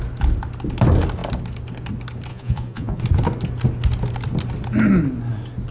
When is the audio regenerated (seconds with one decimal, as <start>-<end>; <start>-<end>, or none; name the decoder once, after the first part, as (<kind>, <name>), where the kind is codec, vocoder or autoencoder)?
2.3-3.0 (vocoder, Vocos)